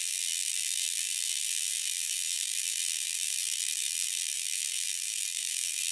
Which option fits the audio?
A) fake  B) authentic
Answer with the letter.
A